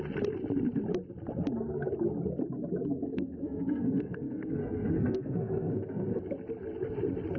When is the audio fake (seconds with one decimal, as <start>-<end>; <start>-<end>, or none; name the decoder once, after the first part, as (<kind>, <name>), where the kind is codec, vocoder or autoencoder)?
3.1-6.2 (codec, SNAC)